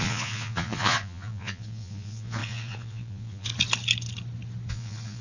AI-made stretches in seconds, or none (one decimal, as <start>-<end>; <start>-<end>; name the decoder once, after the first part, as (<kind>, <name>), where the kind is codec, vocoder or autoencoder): 0.0-3.5 (vocoder, Vocos); 4.7-5.2